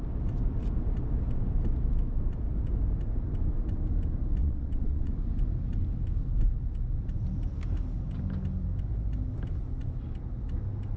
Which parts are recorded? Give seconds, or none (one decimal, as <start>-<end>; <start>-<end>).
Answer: 0.0-4.4; 5.1-11.0